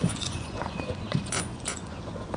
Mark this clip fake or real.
fake